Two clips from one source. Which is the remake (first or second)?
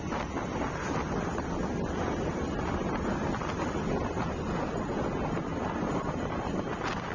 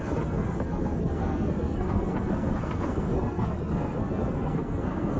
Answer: second